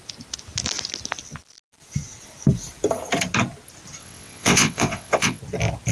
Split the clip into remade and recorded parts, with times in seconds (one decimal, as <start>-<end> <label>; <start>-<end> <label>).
0.0-4.0 recorded; 4.0-5.4 remade; 5.4-5.9 recorded